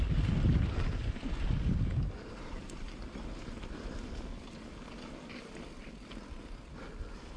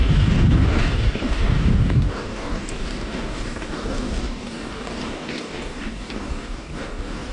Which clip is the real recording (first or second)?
first